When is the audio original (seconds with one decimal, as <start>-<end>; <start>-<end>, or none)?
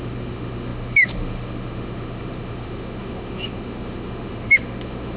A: none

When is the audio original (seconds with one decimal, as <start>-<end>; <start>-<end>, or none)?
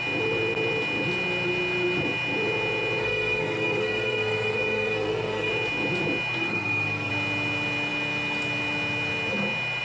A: 0.0-3.0; 5.5-6.4; 7.1-9.8